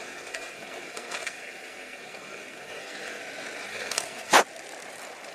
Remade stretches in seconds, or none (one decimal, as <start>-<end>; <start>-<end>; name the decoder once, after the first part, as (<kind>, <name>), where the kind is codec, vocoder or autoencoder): 0.0-3.2 (codec, SNAC); 3.7-4.4